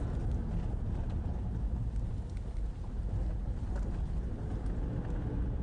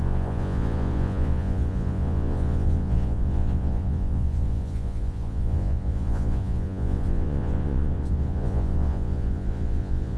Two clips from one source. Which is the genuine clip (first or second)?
first